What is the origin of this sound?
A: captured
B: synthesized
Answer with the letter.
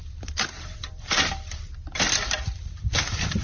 B